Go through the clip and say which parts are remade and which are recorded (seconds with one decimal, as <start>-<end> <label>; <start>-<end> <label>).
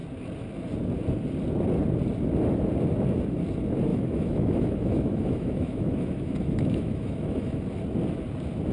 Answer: 0.0-3.9 recorded; 3.9-7.6 remade; 7.6-8.7 recorded